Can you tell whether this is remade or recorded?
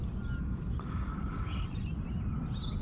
recorded